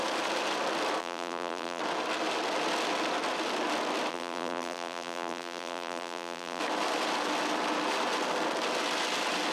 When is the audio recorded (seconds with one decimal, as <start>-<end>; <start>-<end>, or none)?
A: 0.0-1.0; 1.8-4.1; 6.6-9.5